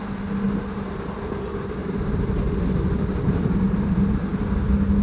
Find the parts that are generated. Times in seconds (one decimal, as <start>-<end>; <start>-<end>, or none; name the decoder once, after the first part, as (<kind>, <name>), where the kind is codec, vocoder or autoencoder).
1.8-2.5 (vocoder, BigVGAN v2); 3.1-3.9